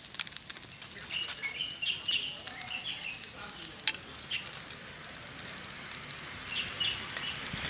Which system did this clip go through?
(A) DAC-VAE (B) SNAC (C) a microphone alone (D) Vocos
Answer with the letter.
C